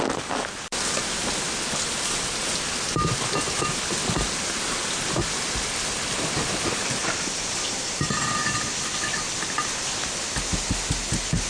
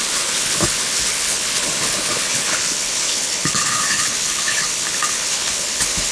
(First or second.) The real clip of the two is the first